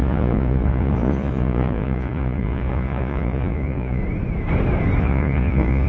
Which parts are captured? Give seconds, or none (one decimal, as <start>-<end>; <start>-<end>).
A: 4.0-5.0